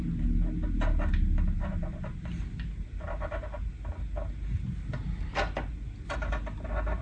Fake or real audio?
real